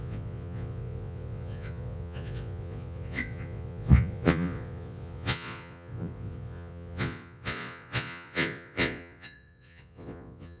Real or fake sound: fake